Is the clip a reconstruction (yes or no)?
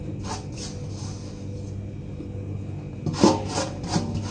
no